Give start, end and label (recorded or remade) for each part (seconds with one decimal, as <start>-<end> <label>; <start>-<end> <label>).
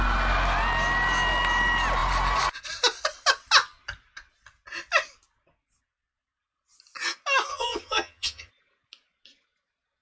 0.0-7.5 recorded; 7.5-8.5 remade; 8.5-10.0 recorded